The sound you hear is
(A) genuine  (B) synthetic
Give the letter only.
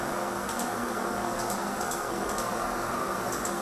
B